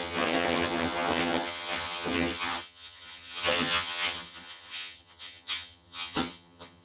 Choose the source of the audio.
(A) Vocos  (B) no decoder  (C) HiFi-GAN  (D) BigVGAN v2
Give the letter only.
C